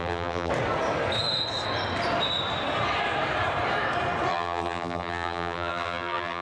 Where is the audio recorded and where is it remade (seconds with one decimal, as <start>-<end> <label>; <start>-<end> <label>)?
0.0-0.5 remade; 0.5-4.3 recorded; 4.3-6.4 remade